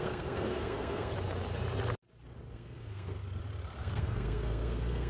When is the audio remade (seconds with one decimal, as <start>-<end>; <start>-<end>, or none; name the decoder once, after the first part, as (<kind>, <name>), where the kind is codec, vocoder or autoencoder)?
0.0-1.1 (codec, SNAC); 2.5-3.2; 3.8-5.1